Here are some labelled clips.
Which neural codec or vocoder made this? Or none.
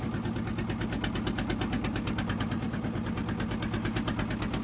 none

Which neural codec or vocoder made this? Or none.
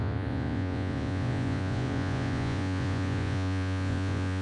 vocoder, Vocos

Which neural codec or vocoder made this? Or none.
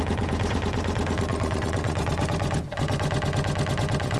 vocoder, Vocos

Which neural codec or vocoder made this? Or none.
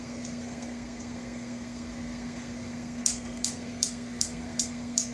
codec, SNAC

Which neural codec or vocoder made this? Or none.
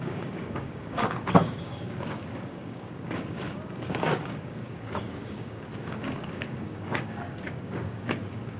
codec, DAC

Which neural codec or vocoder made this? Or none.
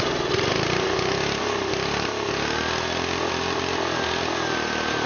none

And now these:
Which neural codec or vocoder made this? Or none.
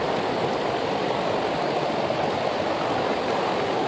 none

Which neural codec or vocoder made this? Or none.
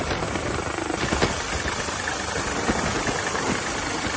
none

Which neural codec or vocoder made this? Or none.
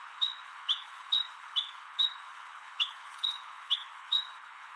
codec, HILCodec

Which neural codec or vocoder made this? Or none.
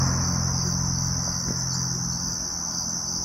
none